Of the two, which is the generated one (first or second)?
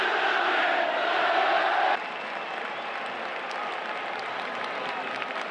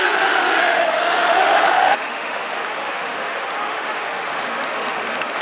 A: second